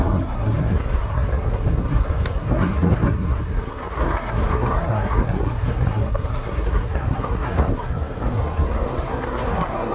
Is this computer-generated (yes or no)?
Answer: yes